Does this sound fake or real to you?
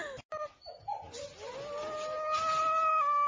real